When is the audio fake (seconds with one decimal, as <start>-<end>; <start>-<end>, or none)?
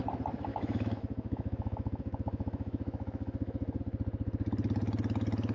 0.5-3.8